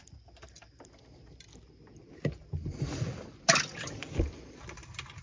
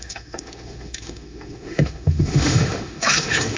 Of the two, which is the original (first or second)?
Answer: first